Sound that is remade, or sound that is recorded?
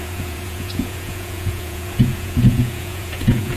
remade